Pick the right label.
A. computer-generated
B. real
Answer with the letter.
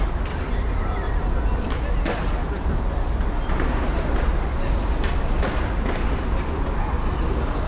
B